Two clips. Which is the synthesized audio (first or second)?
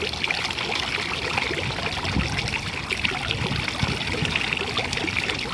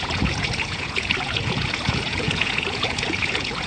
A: second